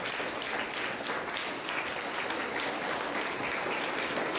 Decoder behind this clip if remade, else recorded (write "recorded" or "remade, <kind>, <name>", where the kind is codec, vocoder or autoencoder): recorded